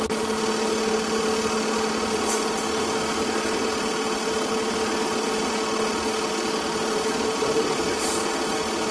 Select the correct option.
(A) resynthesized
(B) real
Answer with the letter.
B